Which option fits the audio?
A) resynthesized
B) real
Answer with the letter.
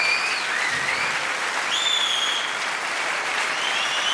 B